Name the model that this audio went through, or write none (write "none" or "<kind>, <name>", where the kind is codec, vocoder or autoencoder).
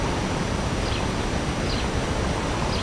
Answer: none